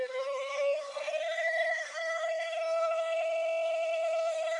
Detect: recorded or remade remade